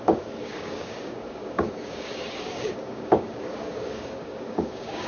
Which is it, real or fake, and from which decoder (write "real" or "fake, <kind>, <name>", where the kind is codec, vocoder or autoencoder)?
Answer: fake, codec, DAC